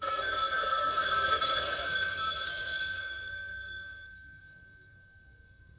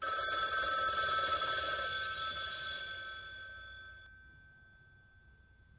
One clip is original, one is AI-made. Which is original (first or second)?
second